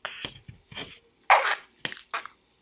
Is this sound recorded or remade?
recorded